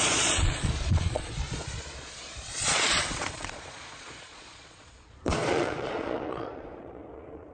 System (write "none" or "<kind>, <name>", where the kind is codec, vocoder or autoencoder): vocoder, Vocos